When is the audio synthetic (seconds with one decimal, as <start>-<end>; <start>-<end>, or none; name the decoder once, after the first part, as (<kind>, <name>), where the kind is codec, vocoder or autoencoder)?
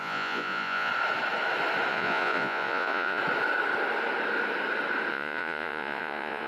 0.0-0.9 (vocoder, Vocos); 1.9-3.2; 5.1-6.5